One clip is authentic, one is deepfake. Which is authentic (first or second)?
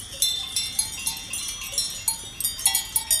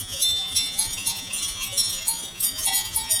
first